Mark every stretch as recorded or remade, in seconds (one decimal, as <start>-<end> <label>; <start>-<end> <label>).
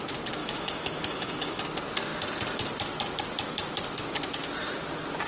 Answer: 0.0-0.4 recorded; 0.4-1.6 remade; 1.6-5.3 recorded